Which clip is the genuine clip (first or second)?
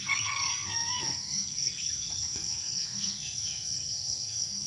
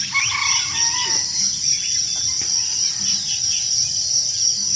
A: second